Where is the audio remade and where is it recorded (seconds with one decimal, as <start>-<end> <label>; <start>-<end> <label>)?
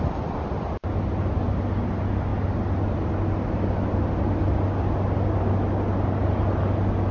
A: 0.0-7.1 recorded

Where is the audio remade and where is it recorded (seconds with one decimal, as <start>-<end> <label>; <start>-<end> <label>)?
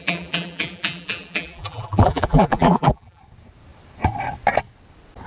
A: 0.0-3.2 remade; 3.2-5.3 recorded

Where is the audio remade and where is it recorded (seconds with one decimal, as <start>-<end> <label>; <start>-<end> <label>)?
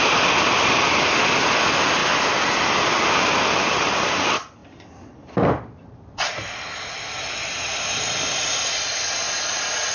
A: 0.0-2.0 remade; 2.0-3.6 recorded; 3.6-9.9 remade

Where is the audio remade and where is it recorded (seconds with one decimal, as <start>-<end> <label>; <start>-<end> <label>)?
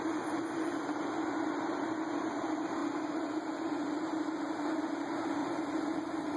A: 0.0-5.4 recorded; 5.4-6.4 remade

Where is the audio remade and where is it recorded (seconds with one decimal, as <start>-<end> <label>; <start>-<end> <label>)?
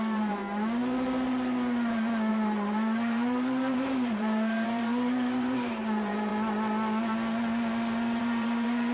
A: 0.0-0.4 remade; 0.4-2.3 recorded; 2.3-6.3 remade; 6.3-8.2 recorded; 8.2-8.9 remade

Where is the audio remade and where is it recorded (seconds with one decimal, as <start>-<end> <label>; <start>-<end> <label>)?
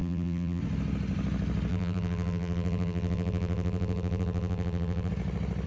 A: 0.0-0.6 remade; 0.6-1.7 recorded; 1.7-5.1 remade; 5.1-5.7 recorded